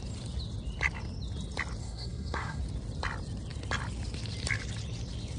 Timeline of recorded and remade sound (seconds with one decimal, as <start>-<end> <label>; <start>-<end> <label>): 0.0-1.8 recorded; 1.8-2.6 remade; 2.6-5.4 recorded